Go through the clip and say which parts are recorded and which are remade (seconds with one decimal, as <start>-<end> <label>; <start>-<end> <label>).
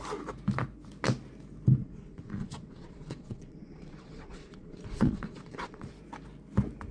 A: 0.0-1.8 recorded; 1.8-5.9 remade; 5.9-6.9 recorded